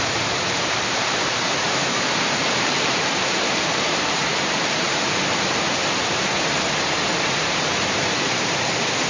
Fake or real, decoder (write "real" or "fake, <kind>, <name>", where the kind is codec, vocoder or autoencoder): fake, vocoder, BigVGAN v2